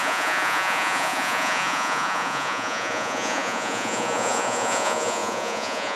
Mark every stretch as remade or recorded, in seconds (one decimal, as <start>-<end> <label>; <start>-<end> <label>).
0.0-6.0 remade